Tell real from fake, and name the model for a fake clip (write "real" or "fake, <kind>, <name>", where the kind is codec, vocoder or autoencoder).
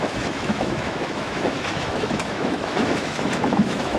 fake, autoencoder, DAC-VAE